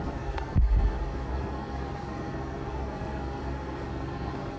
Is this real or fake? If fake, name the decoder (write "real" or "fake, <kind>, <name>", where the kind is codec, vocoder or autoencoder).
fake, codec, SNAC